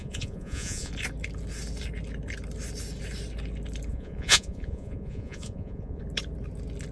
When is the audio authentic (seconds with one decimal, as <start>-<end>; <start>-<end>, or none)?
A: 0.9-3.9; 6.0-6.9